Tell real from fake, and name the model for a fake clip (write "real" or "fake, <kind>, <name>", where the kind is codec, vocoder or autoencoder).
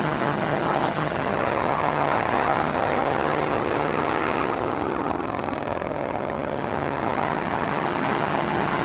fake, vocoder, HiFi-GAN